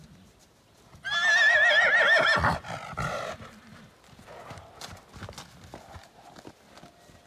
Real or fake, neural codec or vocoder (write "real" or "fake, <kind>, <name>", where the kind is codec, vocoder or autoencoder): real